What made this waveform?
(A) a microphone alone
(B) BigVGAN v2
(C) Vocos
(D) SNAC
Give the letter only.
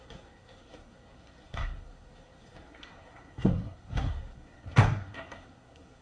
D